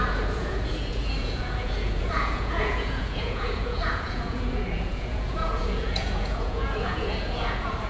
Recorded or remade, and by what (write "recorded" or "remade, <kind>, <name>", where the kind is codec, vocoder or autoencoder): remade, vocoder, Vocos